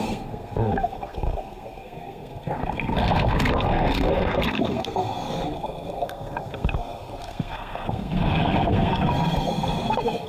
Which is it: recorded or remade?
remade